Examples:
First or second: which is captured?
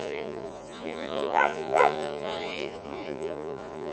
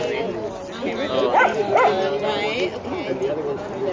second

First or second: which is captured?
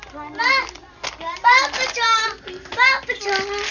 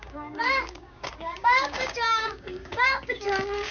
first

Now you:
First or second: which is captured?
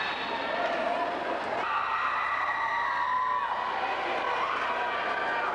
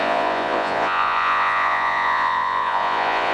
first